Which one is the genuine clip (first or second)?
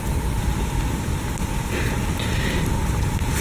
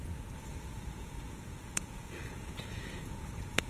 first